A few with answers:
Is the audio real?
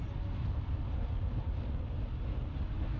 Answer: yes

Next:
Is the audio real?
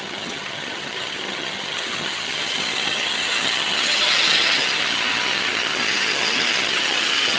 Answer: no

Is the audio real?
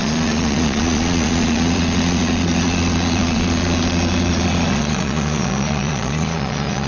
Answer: no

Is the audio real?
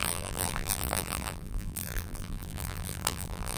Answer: no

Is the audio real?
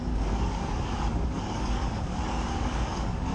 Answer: no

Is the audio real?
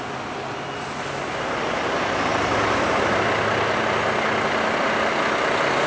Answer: yes